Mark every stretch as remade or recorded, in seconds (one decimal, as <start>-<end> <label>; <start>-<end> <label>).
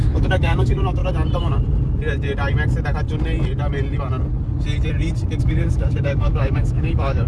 0.0-1.0 remade; 1.0-5.4 recorded; 5.4-7.3 remade